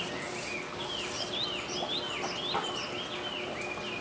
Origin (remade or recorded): recorded